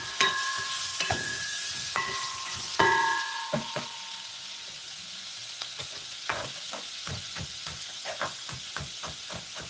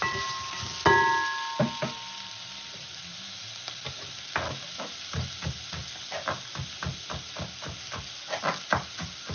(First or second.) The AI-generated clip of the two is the first